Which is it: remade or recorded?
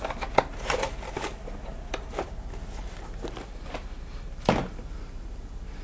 recorded